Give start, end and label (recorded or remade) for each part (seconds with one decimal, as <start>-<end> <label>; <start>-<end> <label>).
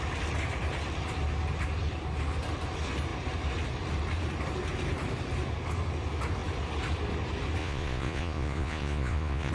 0.0-7.6 recorded; 7.6-9.5 remade